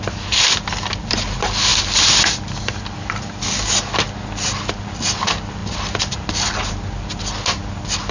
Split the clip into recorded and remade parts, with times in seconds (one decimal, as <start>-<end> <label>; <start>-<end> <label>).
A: 0.0-8.1 recorded